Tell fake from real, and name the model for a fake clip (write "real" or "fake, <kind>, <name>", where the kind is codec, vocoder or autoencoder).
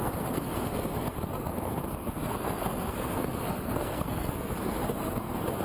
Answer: fake, codec, SNAC